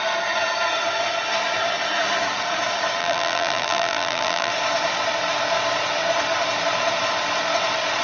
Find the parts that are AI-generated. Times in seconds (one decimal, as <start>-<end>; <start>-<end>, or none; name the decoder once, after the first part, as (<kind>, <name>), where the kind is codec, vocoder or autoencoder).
3.0-4.5 (vocoder, BigVGAN v2)